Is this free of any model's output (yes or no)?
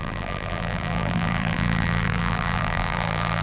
no